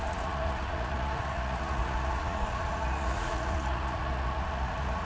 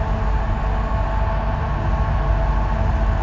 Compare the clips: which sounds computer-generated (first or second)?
first